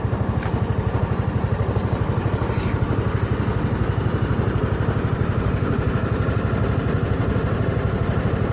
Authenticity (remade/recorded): recorded